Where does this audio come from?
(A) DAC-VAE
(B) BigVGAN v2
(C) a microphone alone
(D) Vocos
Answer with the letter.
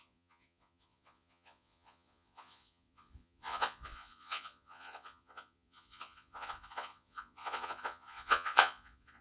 D